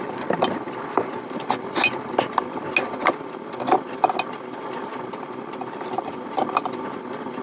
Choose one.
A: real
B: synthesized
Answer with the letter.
A